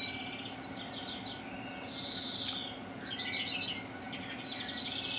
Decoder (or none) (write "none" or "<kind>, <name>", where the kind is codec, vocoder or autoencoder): none